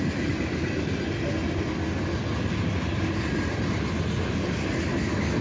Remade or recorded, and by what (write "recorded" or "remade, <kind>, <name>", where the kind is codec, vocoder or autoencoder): recorded